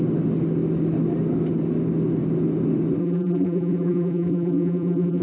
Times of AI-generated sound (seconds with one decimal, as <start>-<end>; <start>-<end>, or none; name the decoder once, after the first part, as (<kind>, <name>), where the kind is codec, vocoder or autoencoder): 3.0-5.2 (vocoder, BigVGAN v2)